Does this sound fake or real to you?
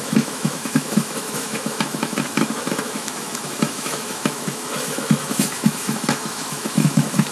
fake